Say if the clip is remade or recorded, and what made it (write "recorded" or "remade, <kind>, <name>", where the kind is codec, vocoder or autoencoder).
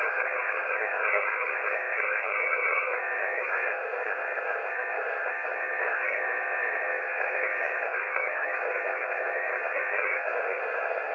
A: remade, codec, SNAC